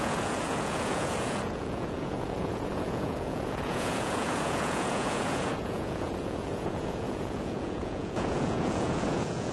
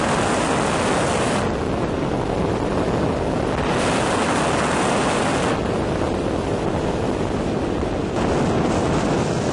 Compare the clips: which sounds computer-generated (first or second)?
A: first